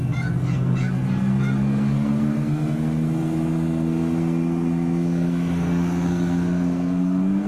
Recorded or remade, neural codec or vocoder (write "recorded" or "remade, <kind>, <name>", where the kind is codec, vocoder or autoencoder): remade, codec, SNAC